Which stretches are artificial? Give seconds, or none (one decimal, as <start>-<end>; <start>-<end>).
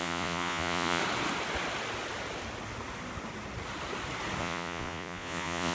0.0-1.0; 4.4-5.7